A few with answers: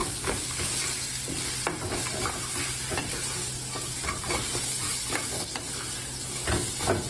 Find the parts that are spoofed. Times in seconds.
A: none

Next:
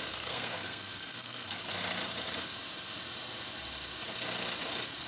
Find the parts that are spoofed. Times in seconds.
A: 0.0-1.6 (codec, SNAC)

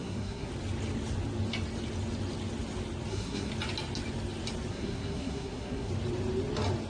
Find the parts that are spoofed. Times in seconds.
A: 0.0-0.5 (codec, SNAC); 3.1-3.5; 4.7-5.9

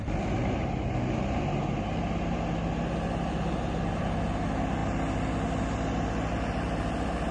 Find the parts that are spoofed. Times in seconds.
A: none

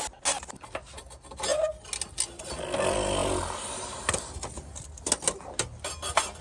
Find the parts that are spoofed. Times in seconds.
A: none

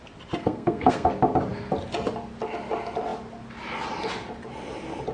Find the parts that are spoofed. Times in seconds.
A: 0.4-1.1 (codec, SNAC)